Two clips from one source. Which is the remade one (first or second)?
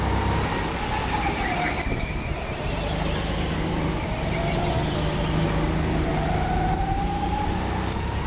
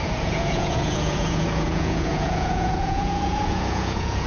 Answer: second